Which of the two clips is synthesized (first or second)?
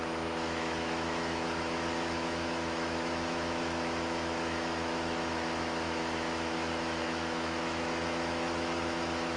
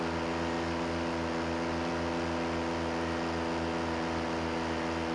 first